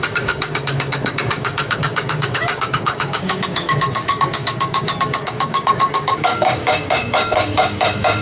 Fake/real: fake